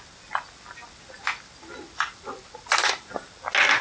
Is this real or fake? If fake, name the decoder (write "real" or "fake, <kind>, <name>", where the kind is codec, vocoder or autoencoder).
real